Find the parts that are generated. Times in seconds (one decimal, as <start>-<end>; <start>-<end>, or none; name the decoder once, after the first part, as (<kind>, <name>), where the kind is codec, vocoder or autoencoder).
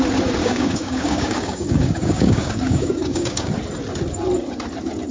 0.4-3.5 (codec, DAC)